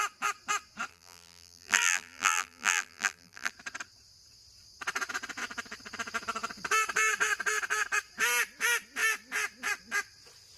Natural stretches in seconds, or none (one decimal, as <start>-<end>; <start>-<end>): 0.0-0.9; 3.5-10.6

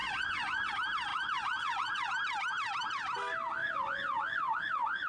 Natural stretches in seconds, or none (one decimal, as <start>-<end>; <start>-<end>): 0.7-1.1; 2.1-3.6

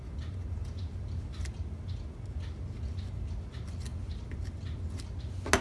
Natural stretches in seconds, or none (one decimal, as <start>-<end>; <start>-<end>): 0.0-5.6

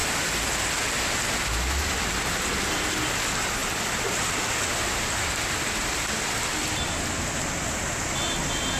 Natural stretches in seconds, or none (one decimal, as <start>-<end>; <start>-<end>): 0.0-3.6; 7.4-8.8

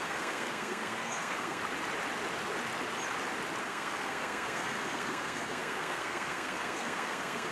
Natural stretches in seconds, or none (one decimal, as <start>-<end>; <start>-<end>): 1.6-3.6

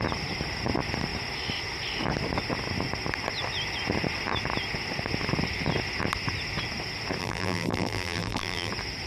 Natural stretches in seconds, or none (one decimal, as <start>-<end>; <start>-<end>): 0.0-7.2; 8.7-9.1

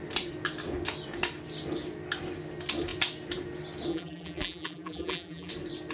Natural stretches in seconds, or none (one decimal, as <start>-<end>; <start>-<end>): 0.0-3.9; 5.5-5.9

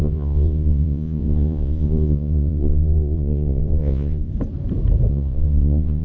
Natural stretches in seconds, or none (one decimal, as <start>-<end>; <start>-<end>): 4.3-5.1